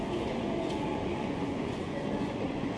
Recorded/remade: remade